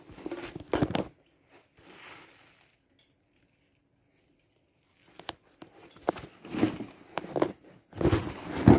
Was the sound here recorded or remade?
recorded